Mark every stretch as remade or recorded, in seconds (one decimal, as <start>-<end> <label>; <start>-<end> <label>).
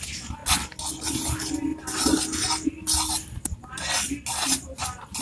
0.0-5.2 recorded